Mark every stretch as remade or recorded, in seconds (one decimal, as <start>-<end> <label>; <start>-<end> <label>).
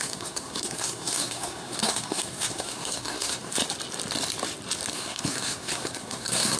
0.0-3.6 remade; 3.6-4.9 recorded; 4.9-6.6 remade